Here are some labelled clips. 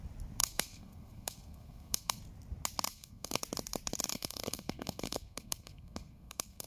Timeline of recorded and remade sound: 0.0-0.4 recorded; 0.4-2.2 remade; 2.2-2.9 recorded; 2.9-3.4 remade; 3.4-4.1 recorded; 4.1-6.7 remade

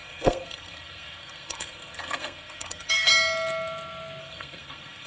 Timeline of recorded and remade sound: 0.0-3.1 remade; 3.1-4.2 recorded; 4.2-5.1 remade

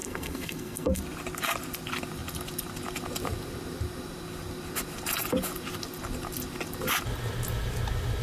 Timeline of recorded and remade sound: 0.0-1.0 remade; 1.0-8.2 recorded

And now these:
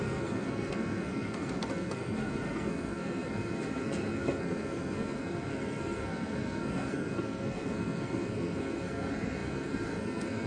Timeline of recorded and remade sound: 0.0-10.5 remade